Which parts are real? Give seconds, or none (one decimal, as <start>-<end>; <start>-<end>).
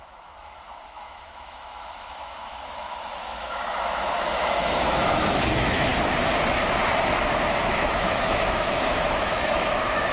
5.9-7.6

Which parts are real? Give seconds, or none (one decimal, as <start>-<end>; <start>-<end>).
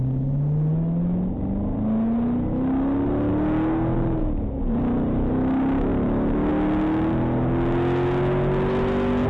0.0-9.3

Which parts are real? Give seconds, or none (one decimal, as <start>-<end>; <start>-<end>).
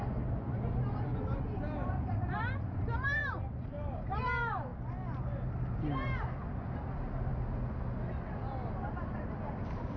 0.0-10.0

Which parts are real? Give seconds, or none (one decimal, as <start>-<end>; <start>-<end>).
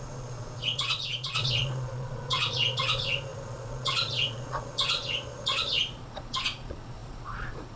none